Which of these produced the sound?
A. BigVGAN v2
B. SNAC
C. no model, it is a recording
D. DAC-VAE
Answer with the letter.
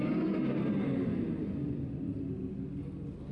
C